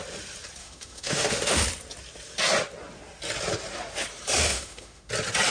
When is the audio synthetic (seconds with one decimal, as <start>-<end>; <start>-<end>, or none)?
0.6-1.6; 4.4-5.1